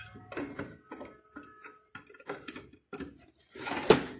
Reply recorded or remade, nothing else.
recorded